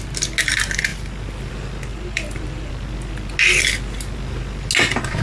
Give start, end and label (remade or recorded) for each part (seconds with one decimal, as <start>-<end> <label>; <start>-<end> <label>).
0.0-1.9 recorded; 1.9-2.7 remade; 2.7-5.2 recorded